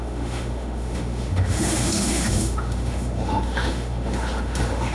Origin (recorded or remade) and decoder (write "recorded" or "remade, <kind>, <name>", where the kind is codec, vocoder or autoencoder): remade, autoencoder, DAC-VAE